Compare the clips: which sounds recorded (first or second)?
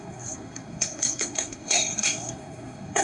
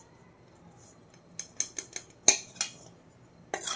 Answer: second